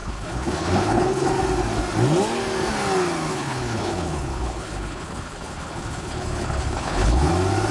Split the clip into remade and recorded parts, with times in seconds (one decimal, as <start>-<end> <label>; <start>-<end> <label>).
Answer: 0.0-1.3 remade; 1.3-3.3 recorded; 3.3-7.3 remade; 7.3-7.7 recorded